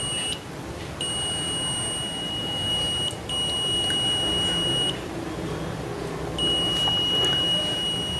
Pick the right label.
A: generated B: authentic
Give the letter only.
B